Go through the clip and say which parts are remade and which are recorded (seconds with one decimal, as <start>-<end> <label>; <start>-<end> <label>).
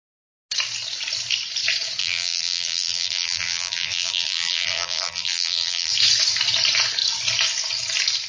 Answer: 0.0-2.0 recorded; 2.0-5.9 remade; 5.9-8.3 recorded